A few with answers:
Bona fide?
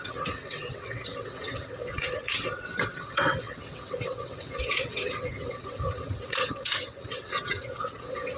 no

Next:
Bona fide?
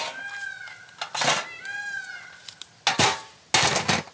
yes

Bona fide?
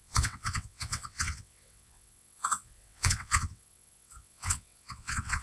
no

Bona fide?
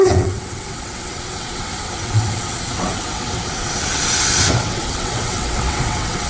no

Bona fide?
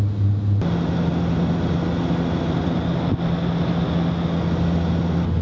yes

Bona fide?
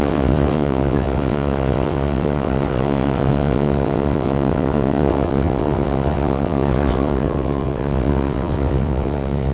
no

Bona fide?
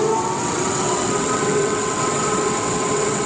no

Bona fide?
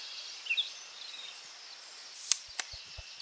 yes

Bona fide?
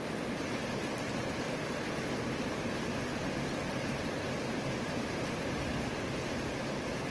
yes